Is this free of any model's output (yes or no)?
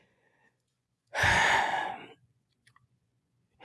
no